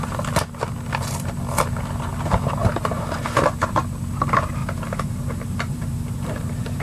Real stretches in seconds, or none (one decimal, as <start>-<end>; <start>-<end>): 0.0-2.6; 3.2-4.6